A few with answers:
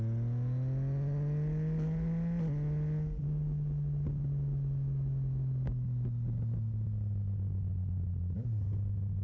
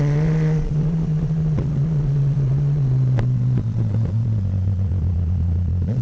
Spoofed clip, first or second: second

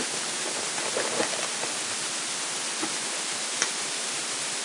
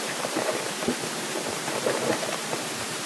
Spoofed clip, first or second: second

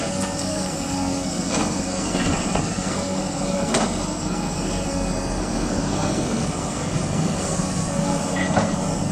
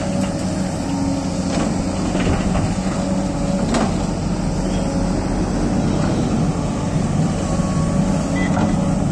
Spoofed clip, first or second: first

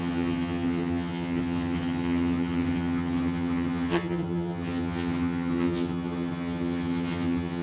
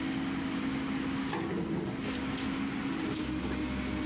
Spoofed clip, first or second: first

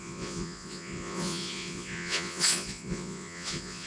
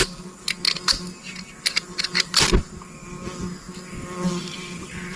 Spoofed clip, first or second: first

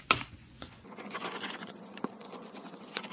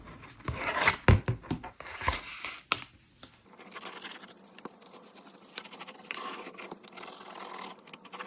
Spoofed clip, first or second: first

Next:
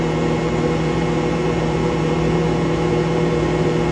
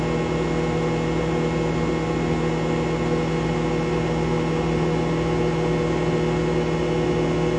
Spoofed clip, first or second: first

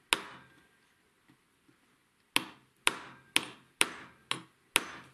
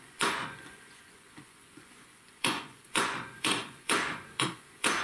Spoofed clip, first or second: second